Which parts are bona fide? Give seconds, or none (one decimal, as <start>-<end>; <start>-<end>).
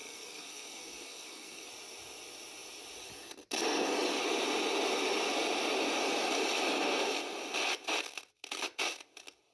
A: 1.7-9.5